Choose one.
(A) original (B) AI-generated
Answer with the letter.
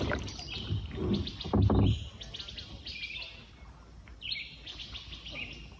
A